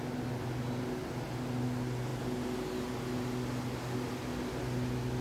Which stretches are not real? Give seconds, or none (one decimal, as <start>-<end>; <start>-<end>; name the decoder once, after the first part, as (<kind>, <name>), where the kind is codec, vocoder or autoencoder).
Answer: none